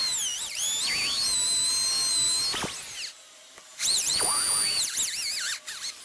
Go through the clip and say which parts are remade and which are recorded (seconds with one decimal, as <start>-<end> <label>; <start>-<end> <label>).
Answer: 0.0-3.7 recorded; 3.7-5.1 remade; 5.1-6.0 recorded